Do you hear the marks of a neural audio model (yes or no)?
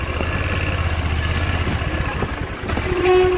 no